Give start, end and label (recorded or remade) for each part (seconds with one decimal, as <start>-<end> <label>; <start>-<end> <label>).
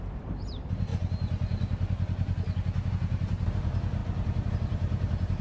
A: 0.0-0.9 remade; 0.9-2.9 recorded; 2.9-4.0 remade; 4.0-4.5 recorded; 4.5-5.4 remade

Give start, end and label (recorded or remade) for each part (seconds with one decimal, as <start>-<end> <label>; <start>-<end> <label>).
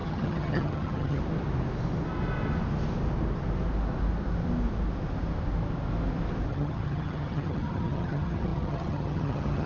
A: 0.0-1.2 remade; 1.2-6.5 recorded; 6.5-9.7 remade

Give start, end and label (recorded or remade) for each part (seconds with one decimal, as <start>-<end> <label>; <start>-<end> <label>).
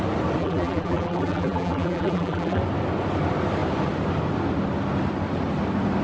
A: 0.0-0.4 recorded; 0.4-2.6 remade; 2.6-6.0 recorded